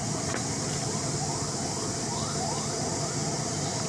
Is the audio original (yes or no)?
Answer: yes